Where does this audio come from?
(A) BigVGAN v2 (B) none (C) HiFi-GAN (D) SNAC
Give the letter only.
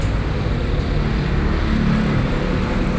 B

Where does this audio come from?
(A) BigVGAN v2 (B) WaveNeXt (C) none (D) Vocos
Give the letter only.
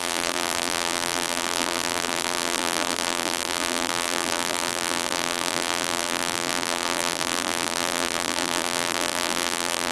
A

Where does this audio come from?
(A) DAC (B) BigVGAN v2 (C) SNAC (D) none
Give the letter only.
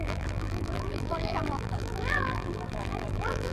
B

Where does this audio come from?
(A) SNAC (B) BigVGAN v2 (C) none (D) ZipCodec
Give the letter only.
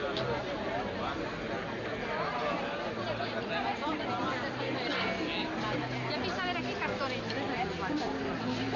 C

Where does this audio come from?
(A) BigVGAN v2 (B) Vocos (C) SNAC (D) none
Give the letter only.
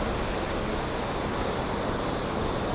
D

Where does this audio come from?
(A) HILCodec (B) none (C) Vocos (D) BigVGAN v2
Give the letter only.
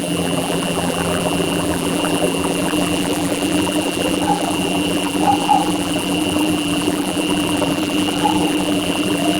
D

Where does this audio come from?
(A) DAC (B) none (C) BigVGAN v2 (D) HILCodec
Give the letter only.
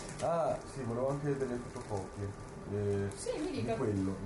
B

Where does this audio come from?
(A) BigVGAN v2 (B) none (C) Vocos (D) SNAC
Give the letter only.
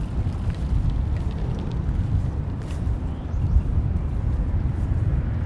A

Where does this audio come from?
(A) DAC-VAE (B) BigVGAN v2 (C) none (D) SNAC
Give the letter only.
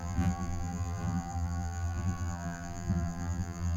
B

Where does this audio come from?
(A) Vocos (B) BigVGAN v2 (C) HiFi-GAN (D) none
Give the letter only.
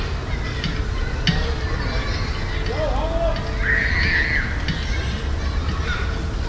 D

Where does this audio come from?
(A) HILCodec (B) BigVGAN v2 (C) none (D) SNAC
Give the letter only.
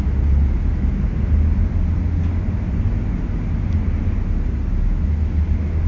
C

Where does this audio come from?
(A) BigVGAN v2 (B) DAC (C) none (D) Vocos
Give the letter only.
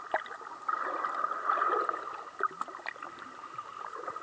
C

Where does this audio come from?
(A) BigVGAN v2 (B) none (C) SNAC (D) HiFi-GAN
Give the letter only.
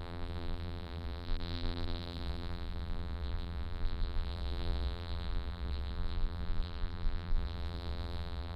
A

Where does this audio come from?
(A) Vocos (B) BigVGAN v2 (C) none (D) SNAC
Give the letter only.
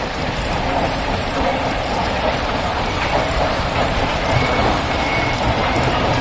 B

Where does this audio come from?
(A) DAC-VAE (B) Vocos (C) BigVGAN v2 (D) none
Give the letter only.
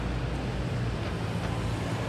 D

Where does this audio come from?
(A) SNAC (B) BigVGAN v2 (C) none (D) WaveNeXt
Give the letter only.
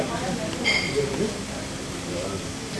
C